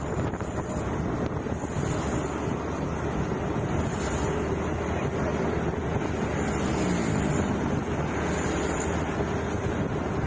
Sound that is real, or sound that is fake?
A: real